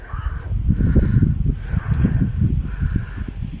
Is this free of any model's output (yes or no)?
yes